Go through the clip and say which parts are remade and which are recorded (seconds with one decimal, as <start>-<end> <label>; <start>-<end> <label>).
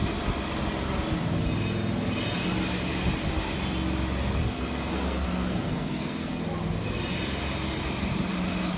0.0-4.4 recorded; 4.4-6.4 remade; 6.4-8.8 recorded